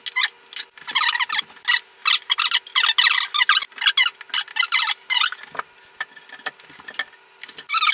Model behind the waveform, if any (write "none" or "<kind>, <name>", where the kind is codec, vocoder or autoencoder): none